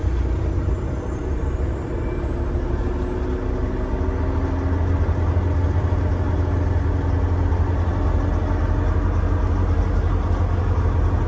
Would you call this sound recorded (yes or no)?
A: yes